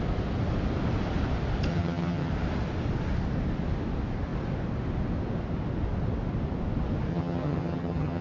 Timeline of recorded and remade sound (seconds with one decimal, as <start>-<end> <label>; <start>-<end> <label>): 0.0-1.7 recorded; 1.7-2.3 remade; 2.3-7.1 recorded; 7.1-8.2 remade